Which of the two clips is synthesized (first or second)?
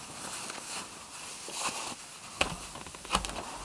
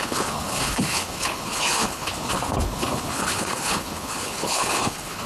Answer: second